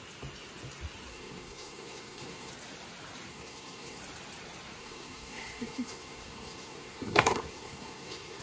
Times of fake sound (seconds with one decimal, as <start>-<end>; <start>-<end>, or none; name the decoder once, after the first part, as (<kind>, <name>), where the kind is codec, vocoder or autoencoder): 1.1-2.5 (codec, SNAC); 3.3-4.0; 4.8-8.4